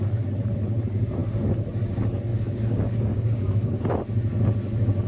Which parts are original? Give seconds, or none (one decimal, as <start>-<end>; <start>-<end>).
0.0-2.3; 3.8-5.1